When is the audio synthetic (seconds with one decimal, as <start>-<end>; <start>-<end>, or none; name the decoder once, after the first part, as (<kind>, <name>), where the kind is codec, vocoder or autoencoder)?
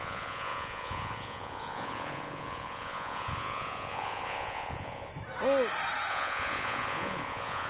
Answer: 0.0-5.1 (vocoder, Vocos); 6.1-7.7